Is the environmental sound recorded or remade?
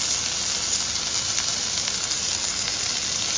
recorded